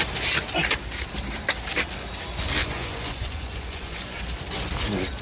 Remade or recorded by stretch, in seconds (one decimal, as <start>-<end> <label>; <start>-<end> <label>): 0.0-2.6 recorded; 2.6-4.2 remade; 4.2-5.2 recorded